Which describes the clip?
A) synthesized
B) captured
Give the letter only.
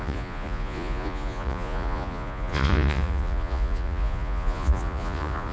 A